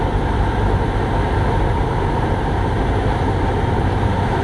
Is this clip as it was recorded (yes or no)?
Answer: no